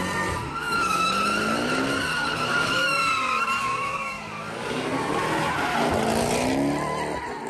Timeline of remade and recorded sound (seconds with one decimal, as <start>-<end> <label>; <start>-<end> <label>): 0.0-0.6 recorded; 0.6-1.1 remade; 1.1-2.5 recorded; 2.5-5.2 remade; 5.2-7.5 recorded